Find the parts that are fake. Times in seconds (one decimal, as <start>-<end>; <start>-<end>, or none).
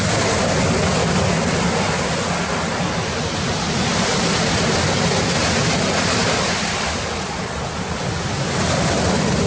none